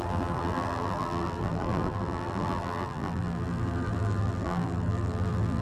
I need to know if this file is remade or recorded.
remade